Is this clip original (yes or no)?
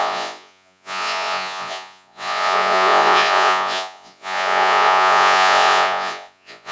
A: no